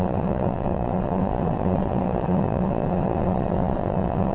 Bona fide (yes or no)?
no